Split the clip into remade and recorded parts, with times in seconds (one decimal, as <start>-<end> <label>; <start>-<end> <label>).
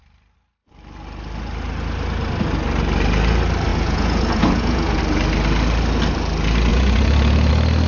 0.0-3.7 recorded; 3.7-5.0 remade; 5.0-6.7 recorded; 6.7-7.5 remade; 7.5-7.9 recorded